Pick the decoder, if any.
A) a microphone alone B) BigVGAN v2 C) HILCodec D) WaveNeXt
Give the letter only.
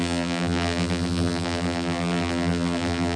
B